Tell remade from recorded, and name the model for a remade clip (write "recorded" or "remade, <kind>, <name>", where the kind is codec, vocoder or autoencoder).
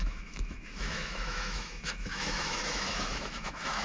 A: remade, autoencoder, DAC-VAE